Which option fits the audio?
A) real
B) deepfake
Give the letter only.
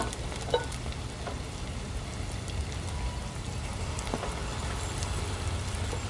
A